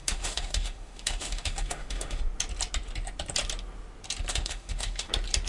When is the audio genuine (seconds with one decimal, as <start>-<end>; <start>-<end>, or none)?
2.2-4.3; 5.1-5.5